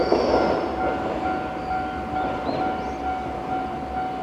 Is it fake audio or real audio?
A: real